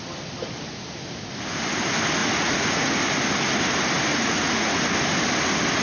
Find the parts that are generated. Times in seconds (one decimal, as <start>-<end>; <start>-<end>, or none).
2.2-3.0; 4.1-4.8